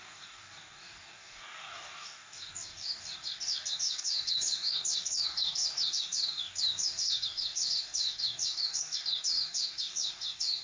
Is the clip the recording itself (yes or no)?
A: no